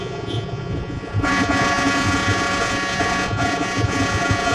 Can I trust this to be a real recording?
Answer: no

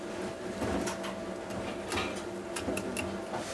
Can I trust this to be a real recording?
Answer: yes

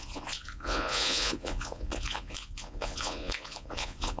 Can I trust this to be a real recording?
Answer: no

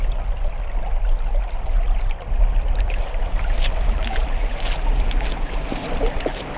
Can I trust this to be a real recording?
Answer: yes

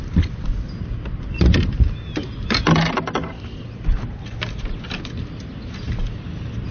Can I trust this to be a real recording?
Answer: yes